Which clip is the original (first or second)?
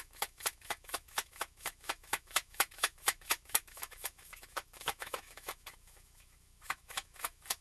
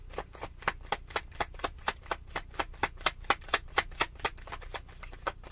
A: second